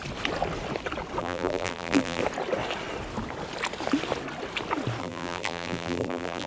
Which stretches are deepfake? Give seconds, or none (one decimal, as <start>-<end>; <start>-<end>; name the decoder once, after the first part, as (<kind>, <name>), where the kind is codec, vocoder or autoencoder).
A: 1.2-2.2 (vocoder, BigVGAN v2); 5.0-6.5